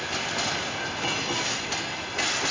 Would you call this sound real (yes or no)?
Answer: yes